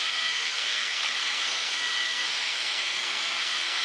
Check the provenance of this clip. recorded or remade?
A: remade